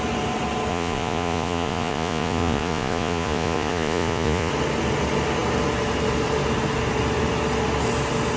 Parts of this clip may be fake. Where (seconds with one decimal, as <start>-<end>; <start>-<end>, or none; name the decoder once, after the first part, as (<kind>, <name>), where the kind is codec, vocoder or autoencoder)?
0.7-4.5 (vocoder, Vocos)